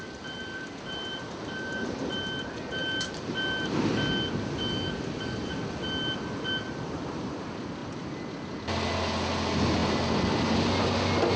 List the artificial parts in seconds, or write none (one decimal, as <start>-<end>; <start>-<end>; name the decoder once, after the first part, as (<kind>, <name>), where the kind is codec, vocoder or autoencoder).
none